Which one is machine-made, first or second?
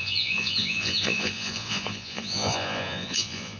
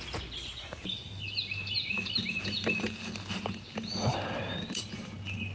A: first